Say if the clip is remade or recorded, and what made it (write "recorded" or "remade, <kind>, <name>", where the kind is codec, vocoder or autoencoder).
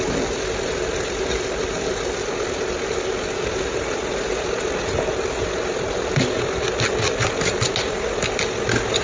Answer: recorded